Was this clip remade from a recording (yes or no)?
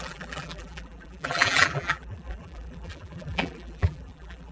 yes